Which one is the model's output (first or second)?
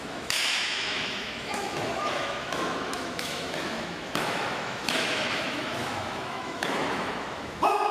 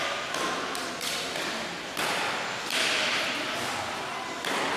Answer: first